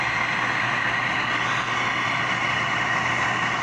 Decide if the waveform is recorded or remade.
recorded